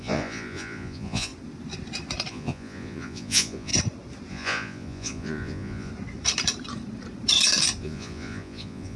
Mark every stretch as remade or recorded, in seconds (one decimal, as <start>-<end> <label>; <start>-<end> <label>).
0.0-1.3 remade; 1.3-2.3 recorded; 2.3-3.7 remade; 3.7-4.3 recorded; 4.3-5.9 remade; 5.9-7.8 recorded; 7.8-9.0 remade

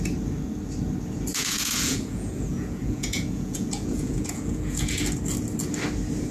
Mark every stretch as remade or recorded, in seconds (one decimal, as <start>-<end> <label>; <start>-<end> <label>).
0.0-1.3 recorded; 1.3-5.0 remade; 5.0-6.3 recorded

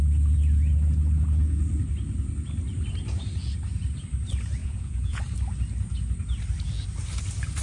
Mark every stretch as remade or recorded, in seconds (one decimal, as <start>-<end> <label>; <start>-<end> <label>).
0.0-4.6 recorded; 4.6-5.2 remade; 5.2-7.6 recorded

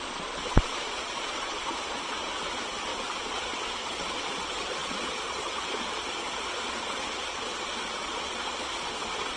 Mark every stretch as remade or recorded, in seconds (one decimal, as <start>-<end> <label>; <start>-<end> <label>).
0.0-9.4 remade

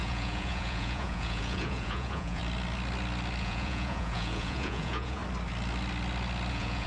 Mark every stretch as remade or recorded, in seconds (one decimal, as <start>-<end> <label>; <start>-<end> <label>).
0.0-2.4 remade; 2.4-3.4 recorded; 3.4-5.2 remade; 5.2-6.5 recorded; 6.5-6.9 remade

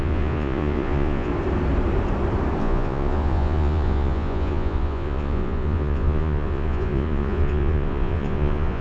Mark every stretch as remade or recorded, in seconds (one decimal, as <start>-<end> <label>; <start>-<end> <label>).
0.0-1.3 remade; 1.3-2.6 recorded; 2.6-8.8 remade